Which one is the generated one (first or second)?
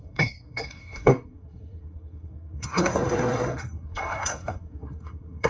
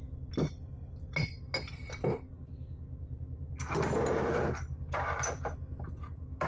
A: first